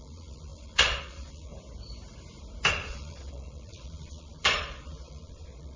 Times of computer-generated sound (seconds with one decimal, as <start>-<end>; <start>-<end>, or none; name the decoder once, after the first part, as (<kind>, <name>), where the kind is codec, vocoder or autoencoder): 0.0-1.5 (vocoder, Vocos); 2.7-5.8